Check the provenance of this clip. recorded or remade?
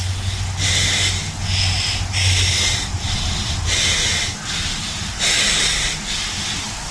recorded